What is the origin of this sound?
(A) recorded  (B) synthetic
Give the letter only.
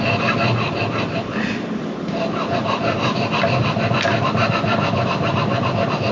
A